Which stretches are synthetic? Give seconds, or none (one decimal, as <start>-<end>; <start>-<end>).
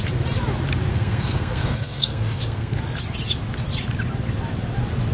0.9-2.8